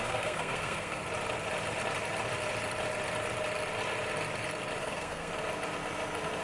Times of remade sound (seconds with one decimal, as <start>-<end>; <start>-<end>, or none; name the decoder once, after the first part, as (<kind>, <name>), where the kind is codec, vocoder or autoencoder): 0.0-1.0 (codec, SNAC); 4.8-5.3

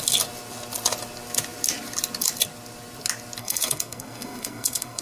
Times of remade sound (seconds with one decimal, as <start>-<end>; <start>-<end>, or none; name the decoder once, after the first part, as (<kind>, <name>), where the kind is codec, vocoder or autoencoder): 3.4-5.0 (codec, SNAC)

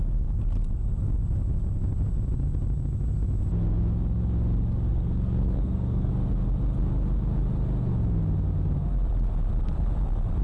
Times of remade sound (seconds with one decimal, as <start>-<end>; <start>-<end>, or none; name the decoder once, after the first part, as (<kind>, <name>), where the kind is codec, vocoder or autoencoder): 4.9-6.1 (codec, SNAC)

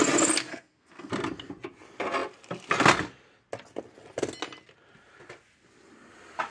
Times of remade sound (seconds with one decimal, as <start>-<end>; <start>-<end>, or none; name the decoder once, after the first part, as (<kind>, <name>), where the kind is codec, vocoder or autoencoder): 0.5-1.1 (codec, SNAC)

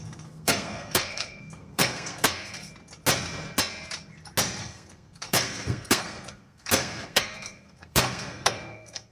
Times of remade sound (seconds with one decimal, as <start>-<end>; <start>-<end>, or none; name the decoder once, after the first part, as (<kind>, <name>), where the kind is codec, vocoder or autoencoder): 0.0-2.7 (codec, SNAC); 4.6-9.1

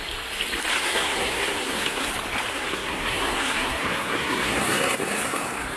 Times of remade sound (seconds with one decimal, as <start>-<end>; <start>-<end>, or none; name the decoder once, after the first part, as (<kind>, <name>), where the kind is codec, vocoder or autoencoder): 0.7-2.1 (codec, SNAC); 2.5-5.8

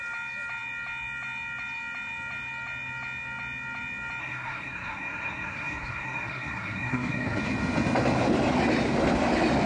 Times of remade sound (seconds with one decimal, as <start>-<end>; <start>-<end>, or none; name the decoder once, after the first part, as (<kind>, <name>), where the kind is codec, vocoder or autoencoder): 4.2-7.4 (codec, SNAC)

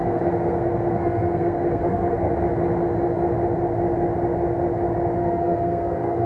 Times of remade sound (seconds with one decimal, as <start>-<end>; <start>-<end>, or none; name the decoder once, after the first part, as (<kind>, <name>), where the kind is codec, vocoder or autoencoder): 0.0-2.3 (codec, SNAC); 5.2-6.3